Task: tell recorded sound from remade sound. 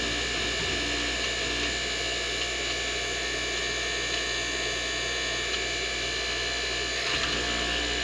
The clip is recorded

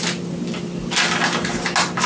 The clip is recorded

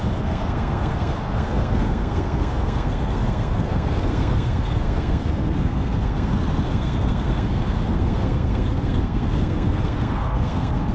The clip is remade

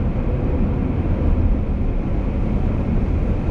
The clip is recorded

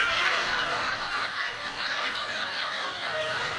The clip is remade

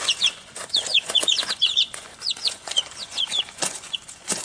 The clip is remade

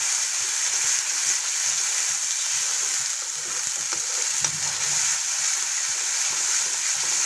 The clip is recorded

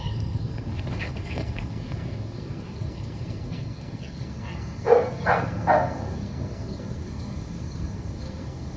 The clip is remade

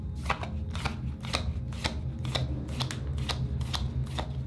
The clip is recorded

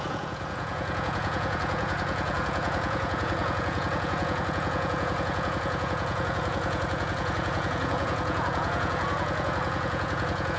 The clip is remade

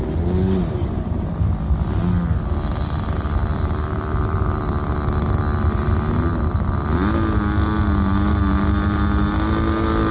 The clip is recorded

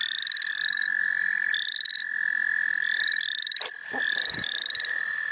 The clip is recorded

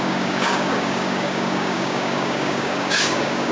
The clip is remade